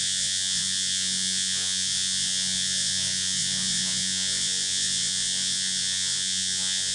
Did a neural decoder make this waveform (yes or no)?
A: yes